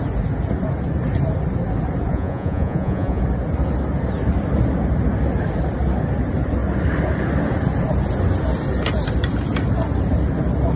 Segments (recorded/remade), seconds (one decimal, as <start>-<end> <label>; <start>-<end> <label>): 0.0-2.1 recorded; 2.1-3.2 remade; 3.2-10.8 recorded